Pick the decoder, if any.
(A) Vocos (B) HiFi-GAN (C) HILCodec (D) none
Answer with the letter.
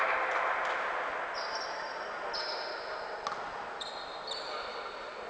D